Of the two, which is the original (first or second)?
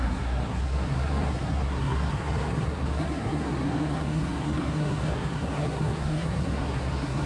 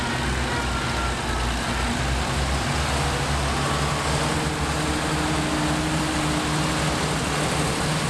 second